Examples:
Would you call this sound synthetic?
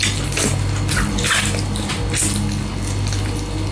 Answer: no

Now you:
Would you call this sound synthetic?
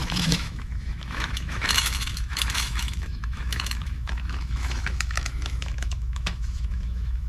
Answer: yes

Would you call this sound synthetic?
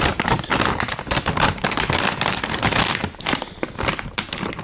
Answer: no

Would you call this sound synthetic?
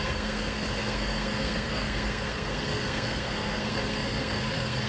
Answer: yes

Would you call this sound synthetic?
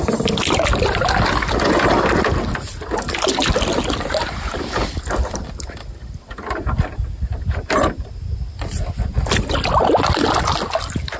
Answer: no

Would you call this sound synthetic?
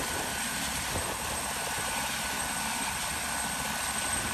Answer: no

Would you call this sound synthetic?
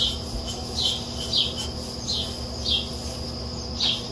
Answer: no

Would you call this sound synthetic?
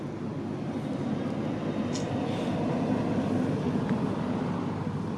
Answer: no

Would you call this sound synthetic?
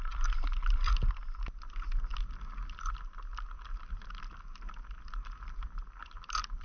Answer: no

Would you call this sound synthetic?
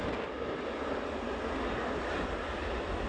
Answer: no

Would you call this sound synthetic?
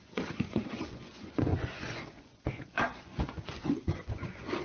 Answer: yes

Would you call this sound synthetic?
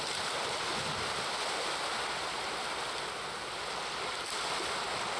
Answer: no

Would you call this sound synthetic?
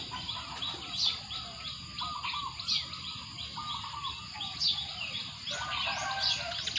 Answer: no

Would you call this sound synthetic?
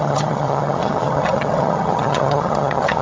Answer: yes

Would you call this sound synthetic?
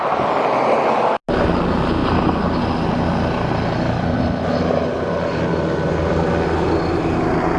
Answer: no